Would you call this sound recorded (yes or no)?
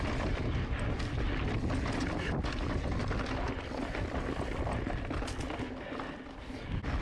yes